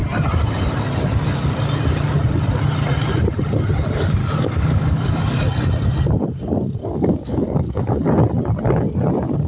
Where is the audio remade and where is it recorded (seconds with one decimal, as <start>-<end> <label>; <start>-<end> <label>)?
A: 0.0-4.2 recorded; 4.2-5.4 remade; 5.4-6.8 recorded; 6.8-8.1 remade; 8.1-9.5 recorded